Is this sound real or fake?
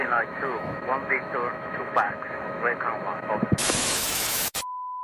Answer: fake